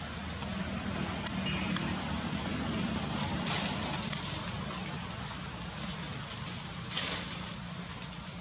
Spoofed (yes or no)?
no